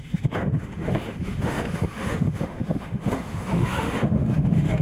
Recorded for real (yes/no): no